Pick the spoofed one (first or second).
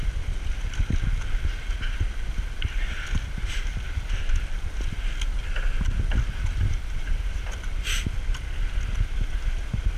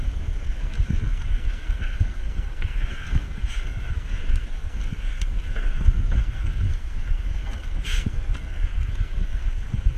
second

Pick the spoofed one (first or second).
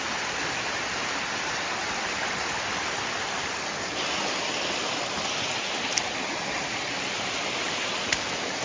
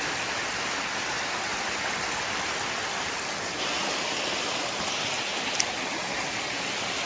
first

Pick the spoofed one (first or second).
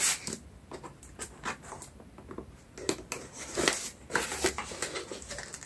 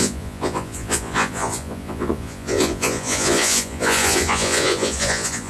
second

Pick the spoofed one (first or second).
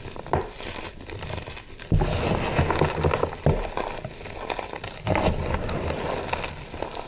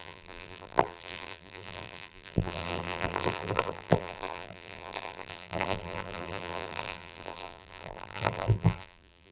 second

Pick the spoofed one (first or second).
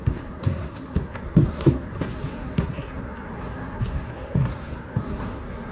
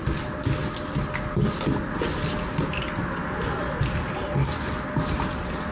first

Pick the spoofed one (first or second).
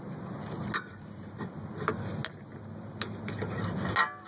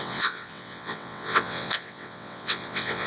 second